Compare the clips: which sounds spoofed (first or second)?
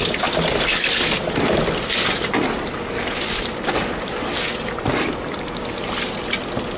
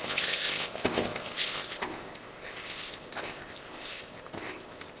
second